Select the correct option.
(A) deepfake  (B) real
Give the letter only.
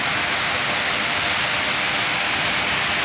B